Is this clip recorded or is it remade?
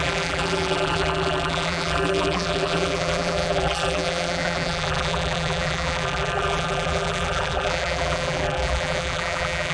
remade